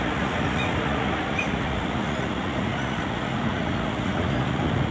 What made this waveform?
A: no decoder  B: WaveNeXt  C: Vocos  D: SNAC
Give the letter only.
C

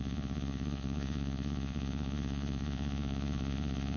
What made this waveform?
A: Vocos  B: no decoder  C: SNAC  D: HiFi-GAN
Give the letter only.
A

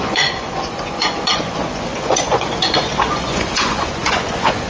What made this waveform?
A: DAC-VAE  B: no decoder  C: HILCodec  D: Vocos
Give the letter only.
D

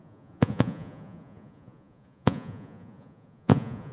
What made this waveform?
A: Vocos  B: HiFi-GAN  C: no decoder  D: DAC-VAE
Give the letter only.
A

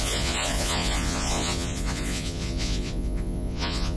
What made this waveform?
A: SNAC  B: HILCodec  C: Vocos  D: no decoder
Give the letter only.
C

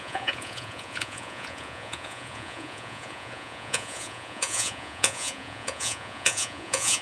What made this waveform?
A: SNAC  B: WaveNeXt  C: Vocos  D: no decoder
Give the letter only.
C